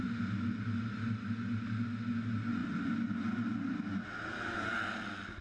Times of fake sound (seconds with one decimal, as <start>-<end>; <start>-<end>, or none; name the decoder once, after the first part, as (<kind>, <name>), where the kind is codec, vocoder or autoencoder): none